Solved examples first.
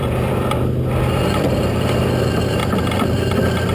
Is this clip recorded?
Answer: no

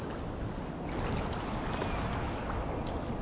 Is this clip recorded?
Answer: yes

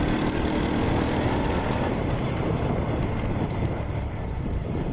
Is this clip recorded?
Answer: no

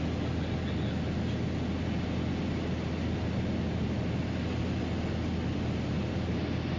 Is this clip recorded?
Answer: yes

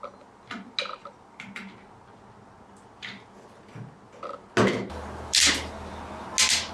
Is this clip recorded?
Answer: yes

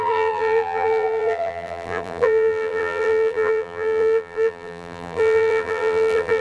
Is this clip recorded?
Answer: no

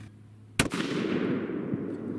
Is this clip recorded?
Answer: yes